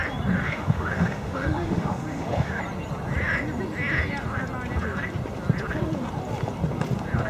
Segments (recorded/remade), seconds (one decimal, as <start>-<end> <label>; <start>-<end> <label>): 0.0-0.4 recorded; 0.4-2.6 remade; 2.6-7.3 recorded